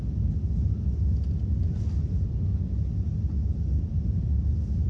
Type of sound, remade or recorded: recorded